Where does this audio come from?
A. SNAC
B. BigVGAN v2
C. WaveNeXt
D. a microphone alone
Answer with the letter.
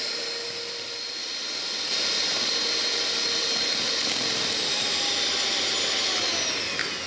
D